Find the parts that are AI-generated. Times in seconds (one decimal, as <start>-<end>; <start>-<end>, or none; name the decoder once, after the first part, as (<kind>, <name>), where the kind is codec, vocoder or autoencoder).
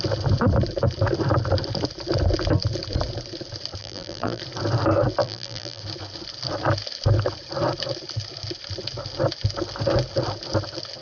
3.8-4.4 (vocoder, BigVGAN v2); 5.2-5.8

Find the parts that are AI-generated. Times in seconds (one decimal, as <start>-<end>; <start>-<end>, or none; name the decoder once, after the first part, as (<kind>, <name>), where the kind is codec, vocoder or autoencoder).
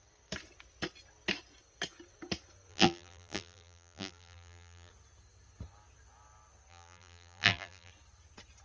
2.7-4.9 (vocoder, BigVGAN v2); 6.7-7.9